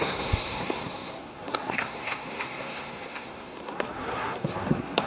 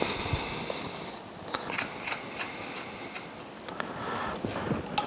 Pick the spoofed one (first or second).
first